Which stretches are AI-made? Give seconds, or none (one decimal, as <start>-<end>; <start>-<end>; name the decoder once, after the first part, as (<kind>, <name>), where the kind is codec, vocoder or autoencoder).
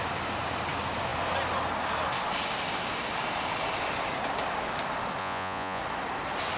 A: 5.2-5.8 (vocoder, Vocos)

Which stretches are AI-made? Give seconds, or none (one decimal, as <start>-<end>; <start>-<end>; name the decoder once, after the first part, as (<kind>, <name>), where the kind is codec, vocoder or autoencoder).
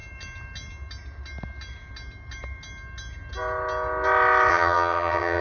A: 4.5-5.4 (vocoder, HiFi-GAN)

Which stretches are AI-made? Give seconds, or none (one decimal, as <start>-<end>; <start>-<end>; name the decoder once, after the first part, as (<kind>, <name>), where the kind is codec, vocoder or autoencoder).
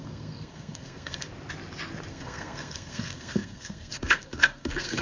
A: 0.0-1.3 (codec, SNAC); 2.1-5.0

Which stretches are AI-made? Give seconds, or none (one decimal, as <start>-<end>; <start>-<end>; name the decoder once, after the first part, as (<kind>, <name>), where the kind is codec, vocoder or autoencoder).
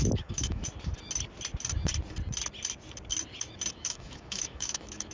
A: 0.0-0.6 (autoencoder, DAC-VAE); 3.7-5.1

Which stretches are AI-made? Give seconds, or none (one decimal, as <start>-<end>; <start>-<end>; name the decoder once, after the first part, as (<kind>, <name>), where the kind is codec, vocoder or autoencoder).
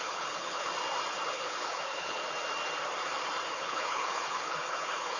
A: 0.0-0.7 (codec, HILCodec); 1.3-2.2; 3.5-5.2